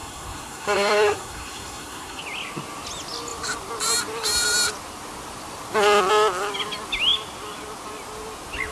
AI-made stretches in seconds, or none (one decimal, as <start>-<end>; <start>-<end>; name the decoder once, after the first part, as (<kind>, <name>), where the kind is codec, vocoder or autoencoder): 0.0-2.2 (codec, SNAC)